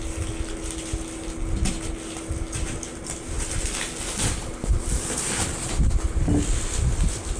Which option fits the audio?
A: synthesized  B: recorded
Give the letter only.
B